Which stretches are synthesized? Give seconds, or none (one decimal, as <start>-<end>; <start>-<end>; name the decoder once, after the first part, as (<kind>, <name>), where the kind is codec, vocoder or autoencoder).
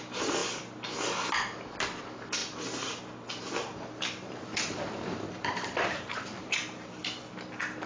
0.0-0.4 (vocoder, BigVGAN v2); 2.0-7.0